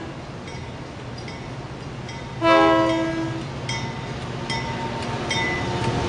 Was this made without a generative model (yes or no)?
yes